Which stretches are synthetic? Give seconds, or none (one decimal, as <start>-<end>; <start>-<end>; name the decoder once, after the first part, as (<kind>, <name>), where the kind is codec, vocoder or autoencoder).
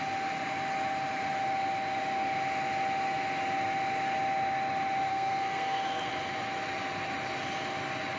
5.1-6.1 (codec, SNAC)